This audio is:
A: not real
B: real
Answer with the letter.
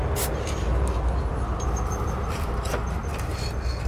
B